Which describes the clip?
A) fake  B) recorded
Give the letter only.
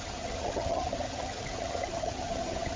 A